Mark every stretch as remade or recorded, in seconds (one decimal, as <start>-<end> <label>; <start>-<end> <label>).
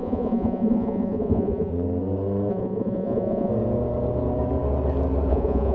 0.0-1.7 remade; 1.7-2.5 recorded; 2.5-3.5 remade; 3.5-5.3 recorded; 5.3-5.7 remade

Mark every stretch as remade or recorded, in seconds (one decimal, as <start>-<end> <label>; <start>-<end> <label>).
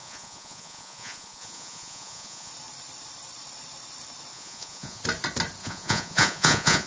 0.0-2.5 remade; 2.5-4.3 recorded; 4.3-5.0 remade; 5.0-5.6 recorded; 5.6-6.9 remade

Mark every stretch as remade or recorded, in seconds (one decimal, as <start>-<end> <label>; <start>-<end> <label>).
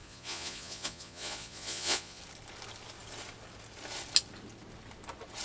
0.0-2.2 remade; 2.2-5.4 recorded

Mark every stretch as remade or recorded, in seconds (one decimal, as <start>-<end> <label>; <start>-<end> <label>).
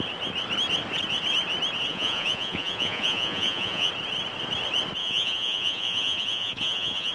0.0-1.9 recorded; 1.9-3.9 remade; 3.9-5.0 recorded; 5.0-7.1 remade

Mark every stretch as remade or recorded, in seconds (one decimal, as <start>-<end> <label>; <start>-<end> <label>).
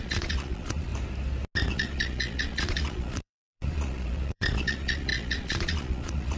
0.0-0.9 remade; 0.9-1.7 recorded; 1.7-6.4 remade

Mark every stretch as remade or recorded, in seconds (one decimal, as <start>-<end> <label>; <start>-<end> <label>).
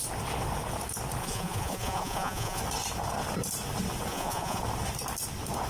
0.0-1.2 recorded; 1.2-2.6 remade; 2.6-4.1 recorded; 4.1-4.6 remade; 4.6-5.7 recorded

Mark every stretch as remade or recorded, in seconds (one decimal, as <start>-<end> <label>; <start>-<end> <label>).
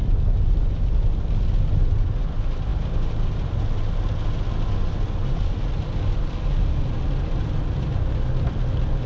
0.0-9.1 recorded